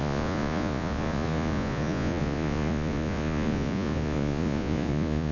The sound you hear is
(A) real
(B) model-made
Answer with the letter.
B